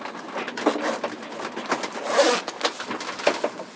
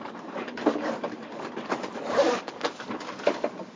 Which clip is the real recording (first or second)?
first